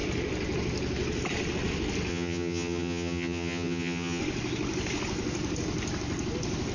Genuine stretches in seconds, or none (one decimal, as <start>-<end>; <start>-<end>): 0.0-2.1; 4.2-6.7